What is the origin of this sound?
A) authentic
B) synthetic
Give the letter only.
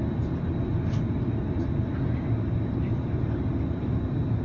A